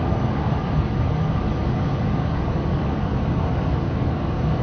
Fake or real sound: fake